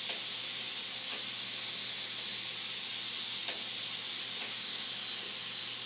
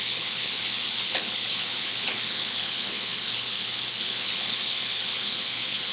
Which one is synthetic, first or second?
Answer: second